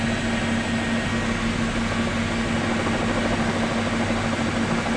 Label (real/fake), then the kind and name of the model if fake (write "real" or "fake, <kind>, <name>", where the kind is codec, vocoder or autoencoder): real